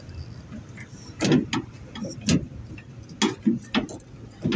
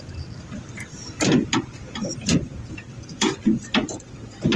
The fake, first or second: second